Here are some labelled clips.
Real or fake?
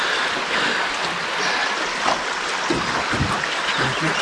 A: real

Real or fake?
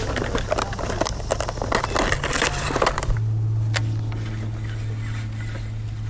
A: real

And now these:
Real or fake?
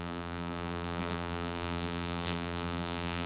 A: fake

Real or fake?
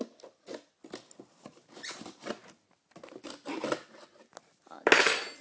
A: real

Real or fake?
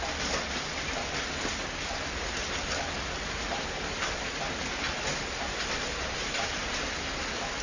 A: real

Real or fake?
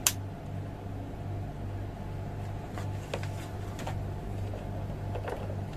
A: real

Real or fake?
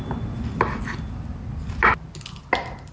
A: real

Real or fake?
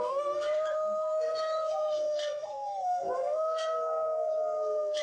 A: fake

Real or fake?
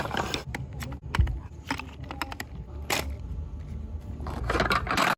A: real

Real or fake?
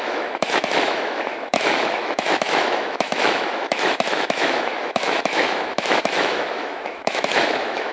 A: fake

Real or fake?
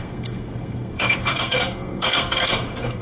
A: fake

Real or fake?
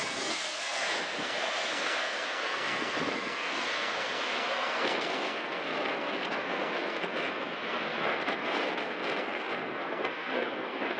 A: fake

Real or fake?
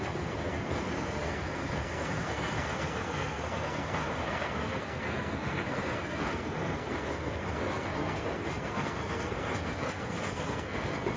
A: fake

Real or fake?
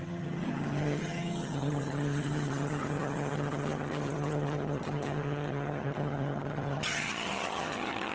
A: fake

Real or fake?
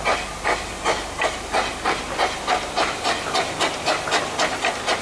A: real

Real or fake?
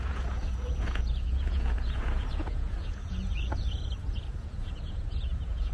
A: fake